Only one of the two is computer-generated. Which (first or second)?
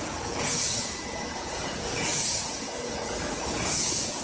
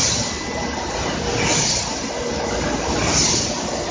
first